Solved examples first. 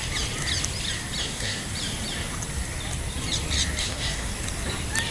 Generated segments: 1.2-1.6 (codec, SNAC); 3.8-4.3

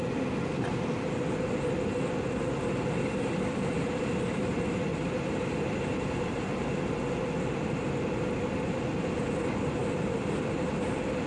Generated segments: 4.9-6.8 (vocoder, BigVGAN v2); 9.8-10.8